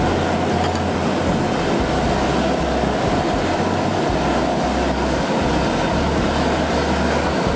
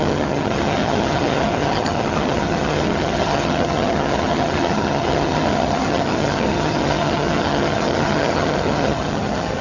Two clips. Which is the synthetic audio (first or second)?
second